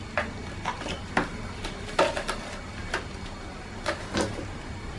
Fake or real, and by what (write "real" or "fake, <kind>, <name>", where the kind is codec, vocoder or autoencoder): real